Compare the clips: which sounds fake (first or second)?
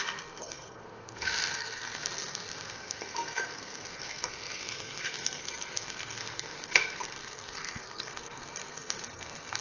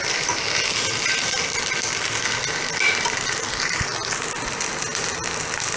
first